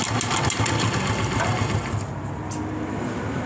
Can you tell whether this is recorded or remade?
recorded